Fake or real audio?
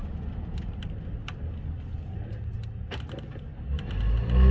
real